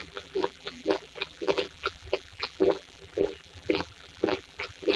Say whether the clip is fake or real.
fake